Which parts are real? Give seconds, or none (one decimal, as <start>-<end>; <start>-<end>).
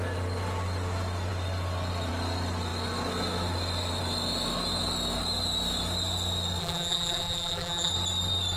0.0-6.6; 7.9-8.6